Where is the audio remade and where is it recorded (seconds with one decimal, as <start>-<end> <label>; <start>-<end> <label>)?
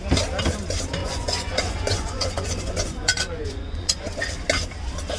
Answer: 0.0-1.0 recorded; 1.0-4.1 remade; 4.1-5.2 recorded